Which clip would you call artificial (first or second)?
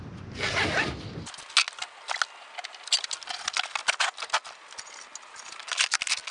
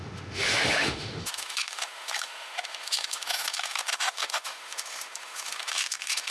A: second